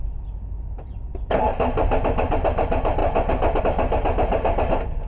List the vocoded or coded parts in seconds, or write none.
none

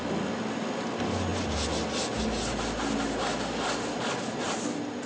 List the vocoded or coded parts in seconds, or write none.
none

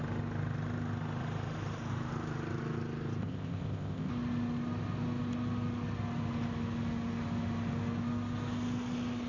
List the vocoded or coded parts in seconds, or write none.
3.2-4.1

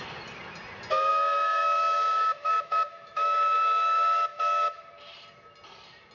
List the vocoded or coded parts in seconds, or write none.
1.1-4.8

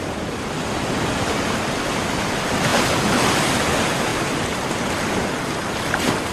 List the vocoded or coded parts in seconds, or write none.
0.0-6.3